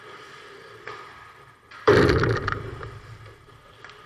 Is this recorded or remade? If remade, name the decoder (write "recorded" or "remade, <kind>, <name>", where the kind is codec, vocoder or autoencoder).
remade, vocoder, BigVGAN v2